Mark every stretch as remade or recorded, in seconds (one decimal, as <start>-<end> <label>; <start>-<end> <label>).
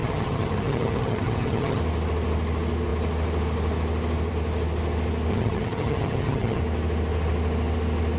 0.0-1.8 remade; 1.8-5.3 recorded; 5.3-6.6 remade; 6.6-8.2 recorded